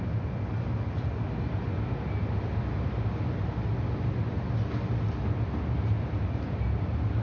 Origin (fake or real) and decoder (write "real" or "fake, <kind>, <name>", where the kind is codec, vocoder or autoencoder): real